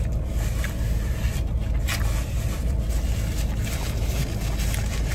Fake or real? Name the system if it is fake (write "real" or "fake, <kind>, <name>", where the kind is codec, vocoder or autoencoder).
real